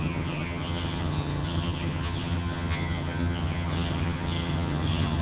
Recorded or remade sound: remade